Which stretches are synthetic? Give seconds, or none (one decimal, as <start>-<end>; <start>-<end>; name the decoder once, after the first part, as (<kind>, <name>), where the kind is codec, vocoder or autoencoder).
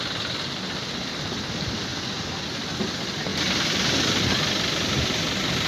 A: none